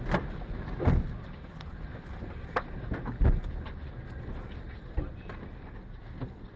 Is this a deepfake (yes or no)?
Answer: no